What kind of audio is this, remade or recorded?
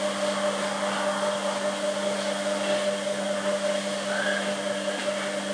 recorded